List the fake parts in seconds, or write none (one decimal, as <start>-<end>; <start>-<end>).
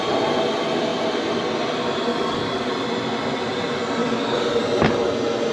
2.1-2.7; 4.0-4.6